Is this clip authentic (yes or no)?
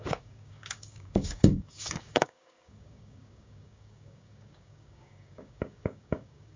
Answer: no